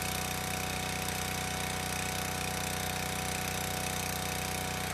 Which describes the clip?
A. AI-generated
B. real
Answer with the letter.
B